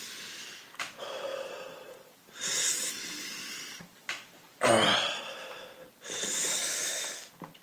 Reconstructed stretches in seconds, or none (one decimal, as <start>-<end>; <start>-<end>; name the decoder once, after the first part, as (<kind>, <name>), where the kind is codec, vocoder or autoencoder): none